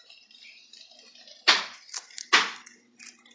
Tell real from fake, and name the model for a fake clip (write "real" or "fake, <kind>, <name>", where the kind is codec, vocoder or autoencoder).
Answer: real